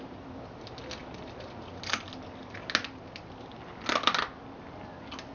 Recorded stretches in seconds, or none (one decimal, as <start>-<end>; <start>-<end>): 0.0-5.3